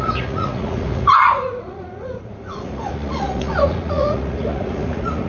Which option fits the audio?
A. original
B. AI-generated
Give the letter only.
B